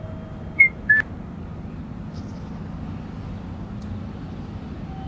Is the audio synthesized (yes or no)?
no